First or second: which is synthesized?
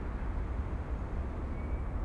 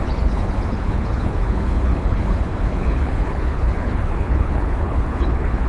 second